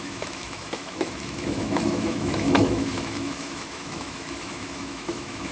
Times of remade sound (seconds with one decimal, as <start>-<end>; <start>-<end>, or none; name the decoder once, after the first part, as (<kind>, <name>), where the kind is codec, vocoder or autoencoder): 0.0-5.5 (autoencoder, DAC-VAE)

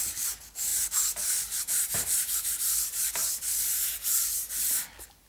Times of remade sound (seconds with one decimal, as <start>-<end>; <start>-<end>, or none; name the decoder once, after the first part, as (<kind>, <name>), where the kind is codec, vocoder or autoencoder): none

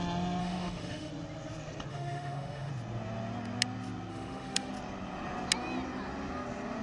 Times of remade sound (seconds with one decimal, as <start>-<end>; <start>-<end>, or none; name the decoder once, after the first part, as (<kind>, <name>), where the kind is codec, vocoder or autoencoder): 0.4-1.1 (autoencoder, DAC-VAE); 1.9-2.7; 4.1-4.7

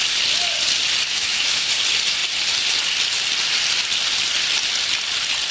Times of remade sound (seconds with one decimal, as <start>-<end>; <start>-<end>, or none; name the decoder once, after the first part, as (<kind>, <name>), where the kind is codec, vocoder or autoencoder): 1.1-1.7 (autoencoder, DAC-VAE)

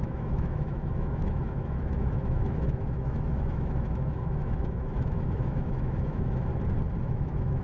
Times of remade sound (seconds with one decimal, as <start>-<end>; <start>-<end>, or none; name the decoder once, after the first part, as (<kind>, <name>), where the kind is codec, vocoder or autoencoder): 0.0-6.5 (autoencoder, DAC-VAE); 7.0-7.6